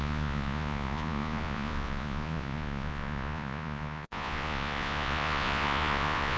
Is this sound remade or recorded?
remade